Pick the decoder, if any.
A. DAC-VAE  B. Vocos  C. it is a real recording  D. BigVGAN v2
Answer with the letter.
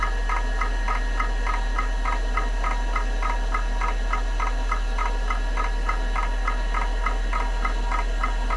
C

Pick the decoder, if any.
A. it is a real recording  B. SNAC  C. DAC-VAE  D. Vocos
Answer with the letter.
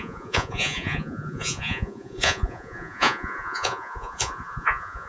D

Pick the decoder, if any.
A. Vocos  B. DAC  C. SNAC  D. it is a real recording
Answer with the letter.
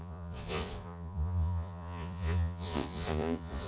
A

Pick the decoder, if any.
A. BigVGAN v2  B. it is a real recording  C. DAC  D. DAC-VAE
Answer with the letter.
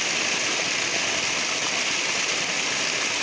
B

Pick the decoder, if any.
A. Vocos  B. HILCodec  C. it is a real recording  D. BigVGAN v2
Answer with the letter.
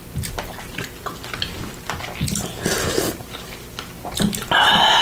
C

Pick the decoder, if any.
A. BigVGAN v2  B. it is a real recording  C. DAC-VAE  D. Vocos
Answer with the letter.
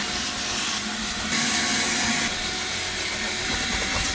B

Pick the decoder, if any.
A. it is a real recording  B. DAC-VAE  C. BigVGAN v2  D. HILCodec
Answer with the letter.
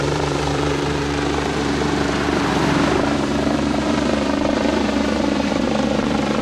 C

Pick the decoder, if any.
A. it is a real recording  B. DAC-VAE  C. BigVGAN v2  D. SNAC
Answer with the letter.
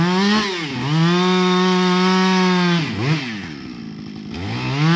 A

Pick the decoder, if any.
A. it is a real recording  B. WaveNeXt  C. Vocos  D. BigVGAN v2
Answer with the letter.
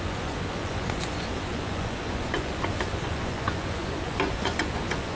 C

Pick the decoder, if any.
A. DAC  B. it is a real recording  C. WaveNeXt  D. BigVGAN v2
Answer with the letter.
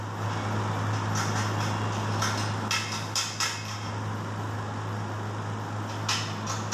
B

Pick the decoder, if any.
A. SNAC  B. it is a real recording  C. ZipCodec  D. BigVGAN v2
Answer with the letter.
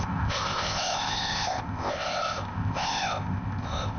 C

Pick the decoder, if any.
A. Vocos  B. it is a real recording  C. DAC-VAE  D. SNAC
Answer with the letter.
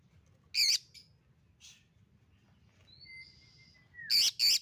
B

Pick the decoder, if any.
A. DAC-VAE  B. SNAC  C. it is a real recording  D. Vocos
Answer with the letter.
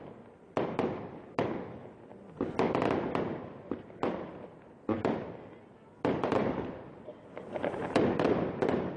C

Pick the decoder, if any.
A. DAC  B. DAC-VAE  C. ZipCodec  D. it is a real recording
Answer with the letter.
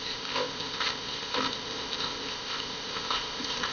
C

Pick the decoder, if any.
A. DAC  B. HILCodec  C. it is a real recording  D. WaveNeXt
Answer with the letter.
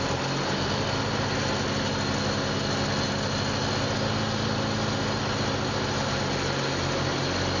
C